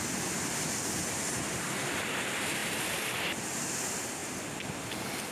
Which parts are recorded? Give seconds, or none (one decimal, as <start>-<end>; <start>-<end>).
0.0-1.0; 1.6-5.3

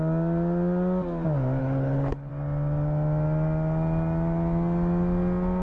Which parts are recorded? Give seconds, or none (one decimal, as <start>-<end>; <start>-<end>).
0.0-1.6; 2.3-5.6

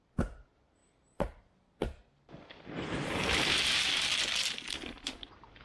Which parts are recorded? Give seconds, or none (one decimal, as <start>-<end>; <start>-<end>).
0.0-5.6